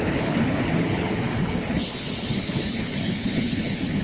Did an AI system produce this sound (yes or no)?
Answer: yes